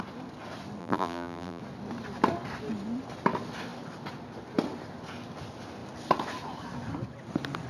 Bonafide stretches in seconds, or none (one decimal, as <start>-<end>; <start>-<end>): 0.0-0.8; 1.6-7.7